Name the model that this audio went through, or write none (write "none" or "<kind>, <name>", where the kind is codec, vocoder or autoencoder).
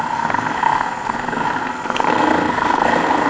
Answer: codec, SNAC